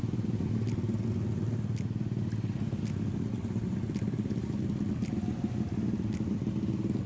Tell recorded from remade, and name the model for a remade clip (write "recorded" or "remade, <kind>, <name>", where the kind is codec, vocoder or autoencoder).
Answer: recorded